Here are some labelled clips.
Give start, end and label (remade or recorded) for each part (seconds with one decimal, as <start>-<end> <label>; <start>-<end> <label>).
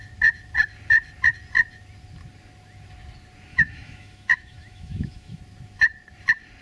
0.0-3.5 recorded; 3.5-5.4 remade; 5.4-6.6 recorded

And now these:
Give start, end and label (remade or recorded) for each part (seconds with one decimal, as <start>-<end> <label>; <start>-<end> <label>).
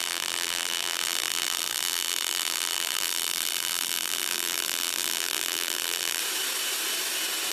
0.0-6.2 remade; 6.2-7.5 recorded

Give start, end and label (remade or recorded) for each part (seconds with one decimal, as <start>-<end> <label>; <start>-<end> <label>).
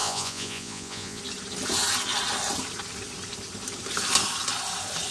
0.0-1.2 remade; 1.2-5.1 recorded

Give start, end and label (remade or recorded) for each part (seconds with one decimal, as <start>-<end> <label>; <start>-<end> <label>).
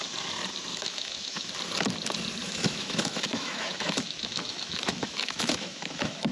0.0-0.7 recorded; 0.7-1.5 remade; 1.5-2.4 recorded; 2.4-6.3 remade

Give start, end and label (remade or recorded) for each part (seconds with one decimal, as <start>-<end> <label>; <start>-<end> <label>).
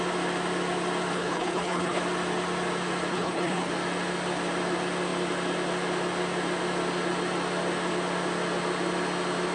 0.0-1.1 recorded; 1.1-2.0 remade; 2.0-3.1 recorded; 3.1-3.7 remade; 3.7-9.5 recorded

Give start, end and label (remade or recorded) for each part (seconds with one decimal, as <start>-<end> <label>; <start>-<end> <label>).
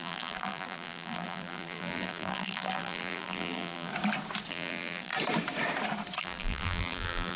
0.0-3.9 remade; 3.9-4.5 recorded; 4.5-5.1 remade; 5.1-6.2 recorded; 6.2-7.4 remade